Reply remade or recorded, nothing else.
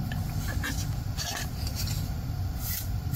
remade